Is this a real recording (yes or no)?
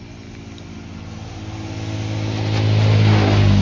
yes